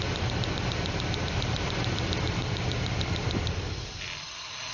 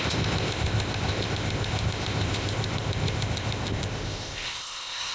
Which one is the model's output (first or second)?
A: second